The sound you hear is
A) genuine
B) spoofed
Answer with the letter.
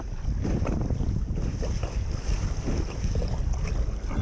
A